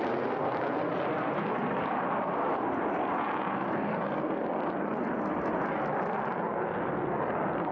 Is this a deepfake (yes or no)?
no